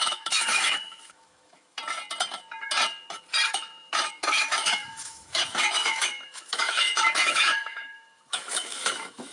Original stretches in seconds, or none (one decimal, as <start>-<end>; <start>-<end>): 1.8-3.5